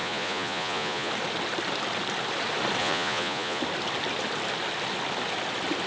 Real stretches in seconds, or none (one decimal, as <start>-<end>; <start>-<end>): 1.1-2.8; 3.6-5.9